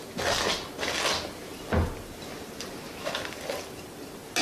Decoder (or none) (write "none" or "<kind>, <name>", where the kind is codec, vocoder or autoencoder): none